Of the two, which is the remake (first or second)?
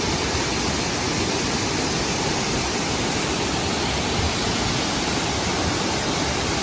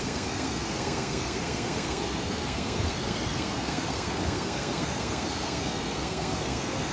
second